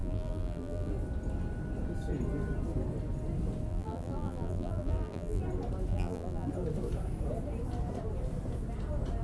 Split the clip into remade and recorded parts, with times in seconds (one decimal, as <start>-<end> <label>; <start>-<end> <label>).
0.0-0.9 remade; 0.9-3.7 recorded; 3.7-5.4 remade; 5.4-5.9 recorded; 5.9-6.5 remade; 6.5-9.2 recorded